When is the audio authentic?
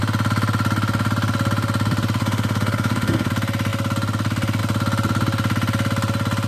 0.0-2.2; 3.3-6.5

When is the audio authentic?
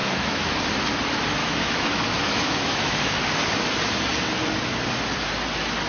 0.5-1.4; 3.2-5.9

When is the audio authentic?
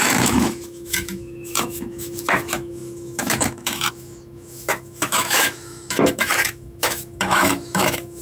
none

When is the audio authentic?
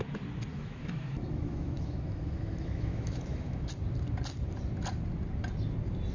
0.0-0.5; 3.7-6.1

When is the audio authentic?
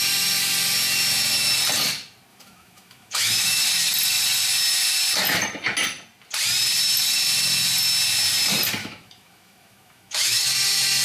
0.0-2.3; 3.6-8.8; 10.4-11.0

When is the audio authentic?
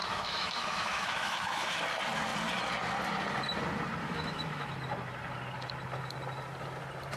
1.8-4.0; 4.7-7.2